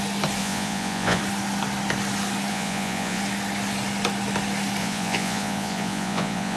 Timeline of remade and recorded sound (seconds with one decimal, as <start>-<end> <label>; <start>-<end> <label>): 0.0-0.4 recorded; 0.4-1.2 remade; 1.2-2.5 recorded; 2.5-3.2 remade; 3.2-4.8 recorded; 4.8-6.6 remade